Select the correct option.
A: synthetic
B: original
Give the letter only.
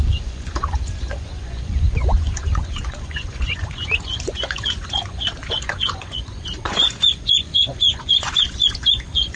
A